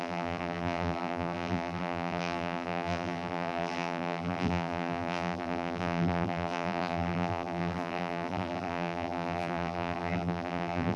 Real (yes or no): no